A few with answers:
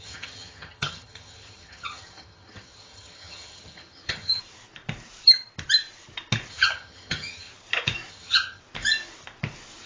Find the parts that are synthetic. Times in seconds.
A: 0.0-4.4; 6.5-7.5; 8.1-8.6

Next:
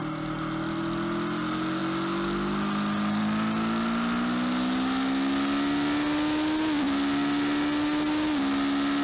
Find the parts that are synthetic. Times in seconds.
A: none